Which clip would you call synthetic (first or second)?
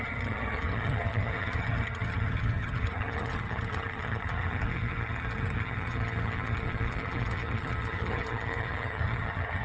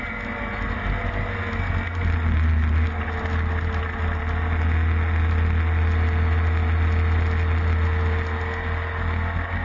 first